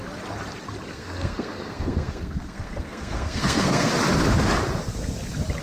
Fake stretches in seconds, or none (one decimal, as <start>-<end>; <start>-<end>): 0.9-3.9